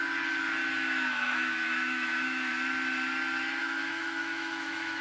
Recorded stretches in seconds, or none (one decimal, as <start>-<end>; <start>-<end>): 0.0-0.6; 2.5-3.6